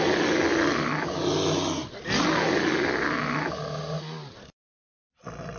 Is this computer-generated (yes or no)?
no